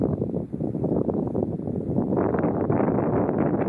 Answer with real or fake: real